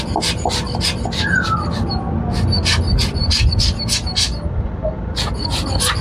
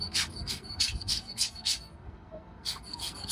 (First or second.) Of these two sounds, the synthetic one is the second